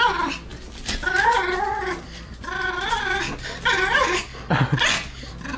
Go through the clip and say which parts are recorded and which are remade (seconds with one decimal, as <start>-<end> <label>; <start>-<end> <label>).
0.0-5.6 recorded